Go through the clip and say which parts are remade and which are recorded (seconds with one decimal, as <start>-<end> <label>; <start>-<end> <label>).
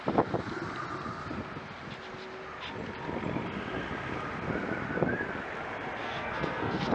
0.0-6.0 recorded; 6.0-6.9 remade